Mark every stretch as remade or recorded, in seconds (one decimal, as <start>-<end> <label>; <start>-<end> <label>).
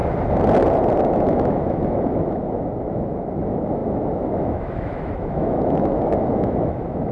0.0-1.0 recorded; 1.0-7.1 remade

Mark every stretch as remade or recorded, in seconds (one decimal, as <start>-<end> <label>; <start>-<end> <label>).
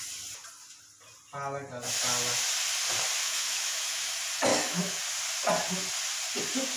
0.0-3.2 recorded; 3.2-4.1 remade; 4.1-4.5 recorded; 4.5-5.0 remade; 5.0-6.8 recorded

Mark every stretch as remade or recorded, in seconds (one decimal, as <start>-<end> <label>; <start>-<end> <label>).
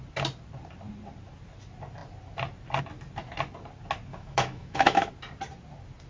0.0-4.1 recorded; 4.1-5.1 remade; 5.1-6.1 recorded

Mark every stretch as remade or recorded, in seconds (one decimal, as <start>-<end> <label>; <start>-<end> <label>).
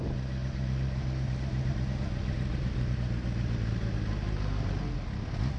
0.0-5.6 recorded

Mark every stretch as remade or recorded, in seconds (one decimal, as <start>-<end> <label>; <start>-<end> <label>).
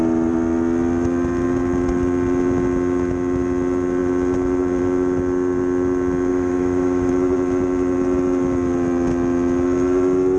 0.0-6.3 recorded; 6.3-7.1 remade; 7.1-10.4 recorded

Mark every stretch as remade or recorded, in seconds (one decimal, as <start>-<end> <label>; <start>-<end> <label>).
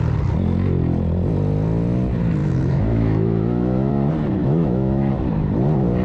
0.0-2.4 recorded; 2.4-3.9 remade; 3.9-4.4 recorded; 4.4-5.1 remade; 5.1-6.0 recorded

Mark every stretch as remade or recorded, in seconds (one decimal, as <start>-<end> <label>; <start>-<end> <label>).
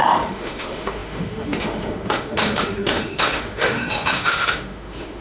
0.0-5.2 remade